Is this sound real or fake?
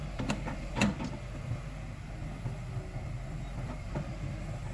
real